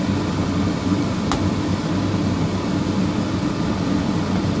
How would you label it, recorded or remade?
recorded